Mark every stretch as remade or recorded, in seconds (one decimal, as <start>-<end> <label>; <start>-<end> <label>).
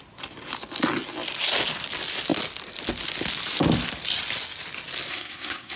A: 0.0-5.1 recorded; 5.1-5.8 remade